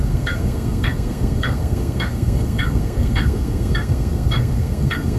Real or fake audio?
fake